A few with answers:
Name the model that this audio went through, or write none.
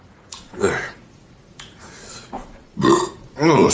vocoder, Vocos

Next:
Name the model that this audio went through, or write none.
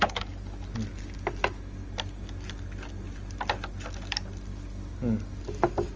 none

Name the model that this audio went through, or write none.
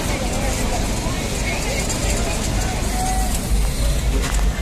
none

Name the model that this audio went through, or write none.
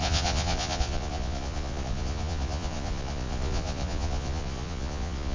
vocoder, Vocos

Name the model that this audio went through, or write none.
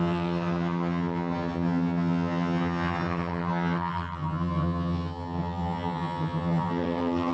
vocoder, HiFi-GAN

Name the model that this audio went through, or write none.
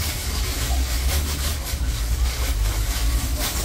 codec, DAC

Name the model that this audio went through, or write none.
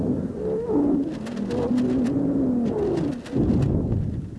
none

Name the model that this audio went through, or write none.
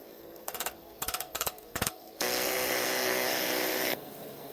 codec, SNAC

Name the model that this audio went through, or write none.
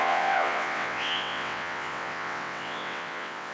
vocoder, WaveNeXt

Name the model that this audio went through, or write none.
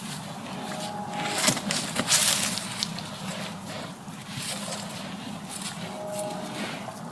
none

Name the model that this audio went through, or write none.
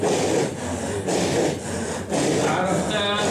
none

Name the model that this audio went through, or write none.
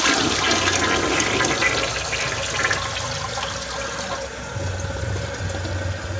none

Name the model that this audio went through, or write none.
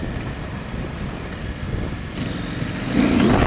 none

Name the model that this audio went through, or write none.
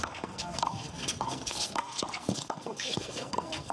codec, SNAC